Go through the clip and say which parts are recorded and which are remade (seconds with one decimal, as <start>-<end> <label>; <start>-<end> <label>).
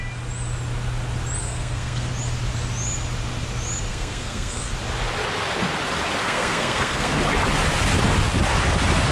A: 0.0-1.4 recorded; 1.4-2.1 remade; 2.1-3.9 recorded; 3.9-4.7 remade; 4.7-6.2 recorded; 6.2-7.2 remade; 7.2-9.1 recorded